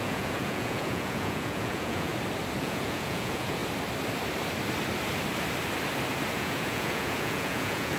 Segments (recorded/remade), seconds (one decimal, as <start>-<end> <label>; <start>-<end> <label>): 0.0-2.1 remade; 2.1-2.6 recorded; 2.6-3.6 remade; 3.6-6.3 recorded; 6.3-8.0 remade